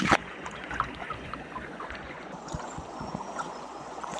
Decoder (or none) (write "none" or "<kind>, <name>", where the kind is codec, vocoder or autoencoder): vocoder, Vocos